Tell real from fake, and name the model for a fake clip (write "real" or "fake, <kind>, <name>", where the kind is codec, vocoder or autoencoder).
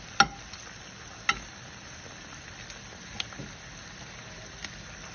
real